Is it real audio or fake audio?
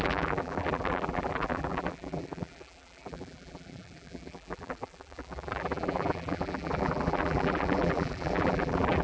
fake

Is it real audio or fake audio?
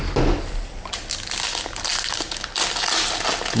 real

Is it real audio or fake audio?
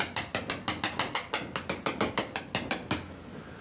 real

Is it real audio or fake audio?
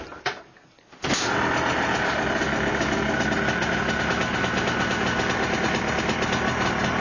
real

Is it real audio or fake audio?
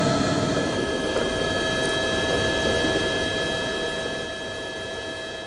real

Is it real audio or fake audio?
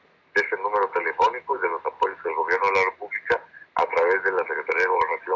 real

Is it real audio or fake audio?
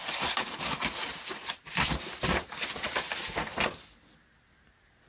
real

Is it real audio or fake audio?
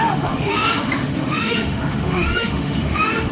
fake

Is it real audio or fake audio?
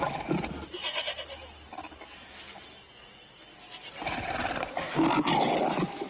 real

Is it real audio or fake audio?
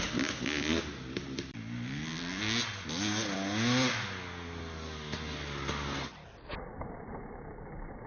real